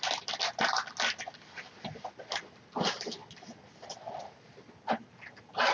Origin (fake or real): real